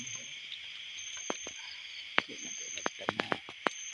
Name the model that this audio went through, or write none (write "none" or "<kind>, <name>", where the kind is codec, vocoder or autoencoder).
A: none